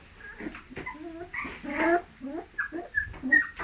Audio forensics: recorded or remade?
recorded